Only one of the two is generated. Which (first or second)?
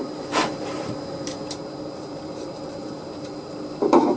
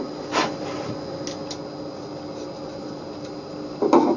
first